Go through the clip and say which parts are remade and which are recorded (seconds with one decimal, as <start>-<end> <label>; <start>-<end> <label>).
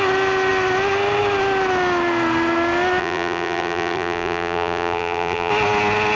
0.0-3.0 recorded; 3.0-5.5 remade; 5.5-6.1 recorded